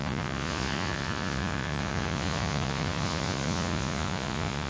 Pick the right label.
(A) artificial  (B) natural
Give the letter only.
A